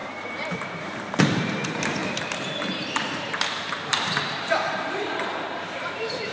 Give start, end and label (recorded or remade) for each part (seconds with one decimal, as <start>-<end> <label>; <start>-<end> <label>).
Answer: 0.0-6.3 remade